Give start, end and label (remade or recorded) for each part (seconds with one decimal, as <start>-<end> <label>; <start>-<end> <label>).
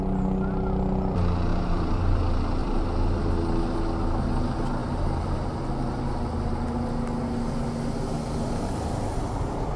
0.0-1.5 recorded; 1.5-2.2 remade; 2.2-2.6 recorded; 2.6-3.3 remade; 3.3-4.8 recorded; 4.8-5.6 remade; 5.6-9.8 recorded